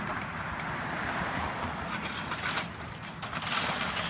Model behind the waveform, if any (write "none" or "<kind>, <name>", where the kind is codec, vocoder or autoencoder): none